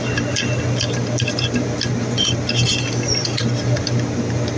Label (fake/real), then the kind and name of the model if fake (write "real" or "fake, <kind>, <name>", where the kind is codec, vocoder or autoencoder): real